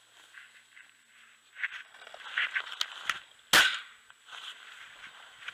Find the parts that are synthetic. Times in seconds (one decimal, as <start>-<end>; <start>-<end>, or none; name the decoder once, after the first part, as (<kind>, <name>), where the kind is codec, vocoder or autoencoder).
none